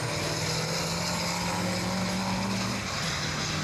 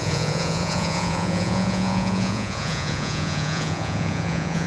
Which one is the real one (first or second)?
first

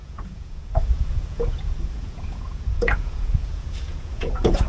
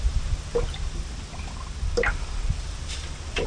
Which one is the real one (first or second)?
second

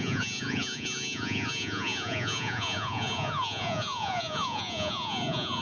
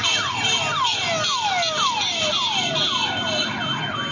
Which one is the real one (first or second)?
second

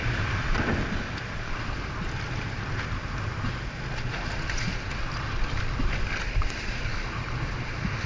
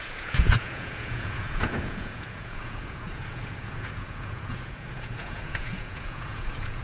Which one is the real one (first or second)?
first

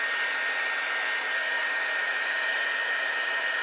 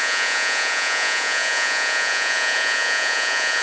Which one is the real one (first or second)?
first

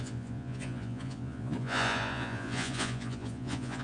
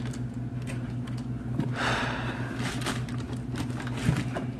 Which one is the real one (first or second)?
second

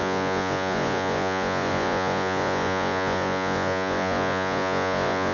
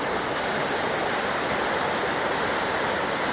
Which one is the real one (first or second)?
second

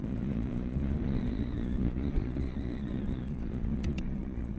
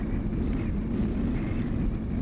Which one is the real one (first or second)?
second